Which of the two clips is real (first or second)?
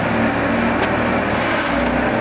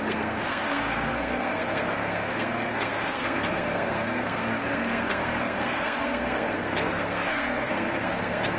first